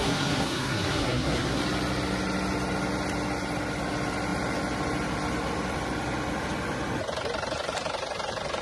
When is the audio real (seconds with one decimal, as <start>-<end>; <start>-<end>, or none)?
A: 1.6-8.6